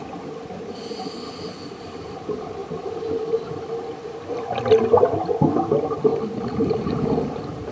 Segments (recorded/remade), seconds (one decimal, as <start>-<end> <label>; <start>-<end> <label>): 0.0-2.6 recorded; 2.6-4.3 remade; 4.3-7.7 recorded